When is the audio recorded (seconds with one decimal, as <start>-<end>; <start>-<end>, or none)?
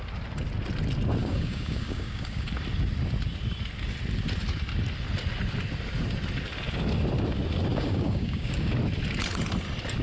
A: 0.0-1.2; 2.5-7.7; 8.7-10.0